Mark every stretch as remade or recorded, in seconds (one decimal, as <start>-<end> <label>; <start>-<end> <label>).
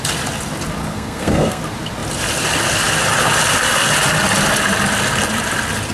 0.0-0.8 recorded; 0.8-1.6 remade; 1.6-5.9 recorded